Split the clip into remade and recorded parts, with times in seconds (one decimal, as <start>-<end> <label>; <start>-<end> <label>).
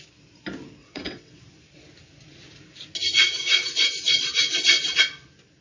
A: 0.0-0.8 recorded; 0.8-1.4 remade; 1.4-5.6 recorded